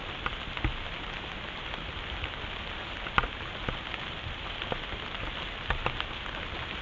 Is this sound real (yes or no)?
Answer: yes